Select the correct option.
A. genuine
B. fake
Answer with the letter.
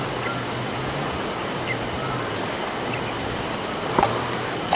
A